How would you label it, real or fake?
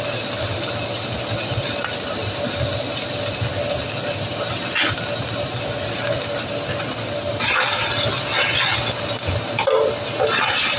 real